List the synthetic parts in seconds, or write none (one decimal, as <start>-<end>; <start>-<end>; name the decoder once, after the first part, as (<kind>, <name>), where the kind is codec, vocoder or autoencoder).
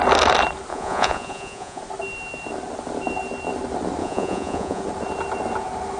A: 0.7-1.8 (vocoder, Vocos); 4.0-4.8